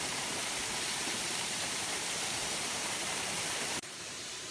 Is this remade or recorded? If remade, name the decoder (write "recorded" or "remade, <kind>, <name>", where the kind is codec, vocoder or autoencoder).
remade, vocoder, BigVGAN v2